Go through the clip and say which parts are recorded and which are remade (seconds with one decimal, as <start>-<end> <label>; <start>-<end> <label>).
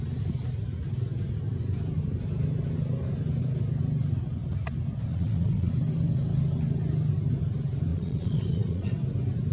0.0-5.1 recorded; 5.1-5.7 remade; 5.7-7.9 recorded; 7.9-8.9 remade; 8.9-9.5 recorded